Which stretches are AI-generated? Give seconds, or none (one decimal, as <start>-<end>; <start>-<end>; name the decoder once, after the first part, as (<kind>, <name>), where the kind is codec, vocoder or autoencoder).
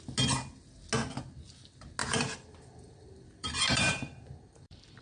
2.0-5.0 (vocoder, BigVGAN v2)